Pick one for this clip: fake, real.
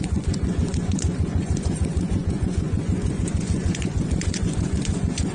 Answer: fake